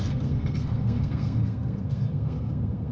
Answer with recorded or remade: remade